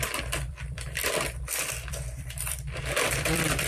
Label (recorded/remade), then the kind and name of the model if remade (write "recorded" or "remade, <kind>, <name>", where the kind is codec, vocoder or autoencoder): remade, vocoder, BigVGAN v2